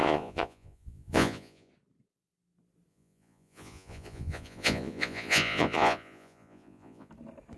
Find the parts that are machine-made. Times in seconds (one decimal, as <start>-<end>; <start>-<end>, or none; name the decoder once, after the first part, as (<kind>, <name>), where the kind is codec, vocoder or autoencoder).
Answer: 0.0-1.7 (vocoder, Vocos); 2.9-7.1